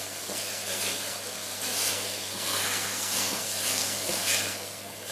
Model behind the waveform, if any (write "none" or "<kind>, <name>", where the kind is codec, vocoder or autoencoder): codec, SNAC